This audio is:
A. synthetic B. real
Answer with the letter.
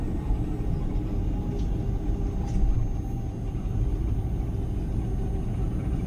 B